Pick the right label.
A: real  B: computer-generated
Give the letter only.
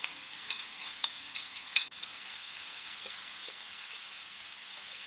B